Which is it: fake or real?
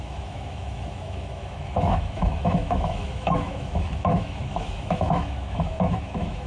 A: fake